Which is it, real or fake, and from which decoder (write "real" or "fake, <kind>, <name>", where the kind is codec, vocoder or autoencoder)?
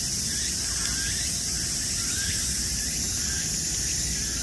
real